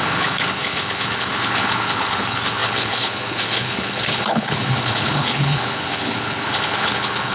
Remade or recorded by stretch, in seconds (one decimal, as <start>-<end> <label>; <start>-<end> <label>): 0.0-7.3 remade